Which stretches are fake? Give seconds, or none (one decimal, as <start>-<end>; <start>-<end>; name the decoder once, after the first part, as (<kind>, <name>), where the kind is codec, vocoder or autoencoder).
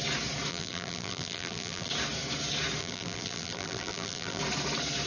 0.5-1.9 (vocoder, BigVGAN v2); 2.8-4.4